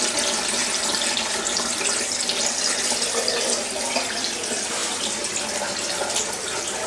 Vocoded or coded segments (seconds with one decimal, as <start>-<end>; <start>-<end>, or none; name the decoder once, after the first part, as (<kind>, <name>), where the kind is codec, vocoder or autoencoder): none